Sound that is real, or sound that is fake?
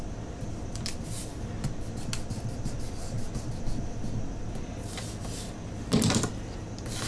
real